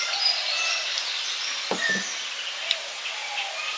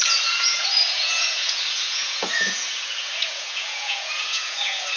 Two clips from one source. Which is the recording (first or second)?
first